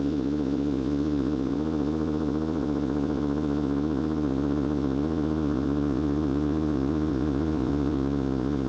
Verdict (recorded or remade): remade